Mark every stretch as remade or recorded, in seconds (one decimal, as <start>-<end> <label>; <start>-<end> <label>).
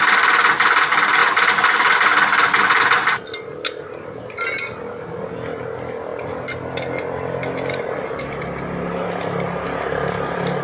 0.0-10.6 recorded